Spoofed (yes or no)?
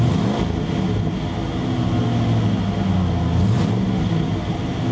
no